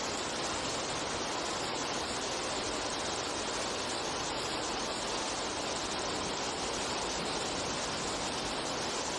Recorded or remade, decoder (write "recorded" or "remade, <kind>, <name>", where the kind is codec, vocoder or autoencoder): recorded